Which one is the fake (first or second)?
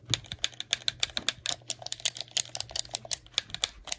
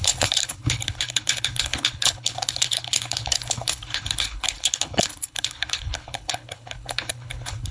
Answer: second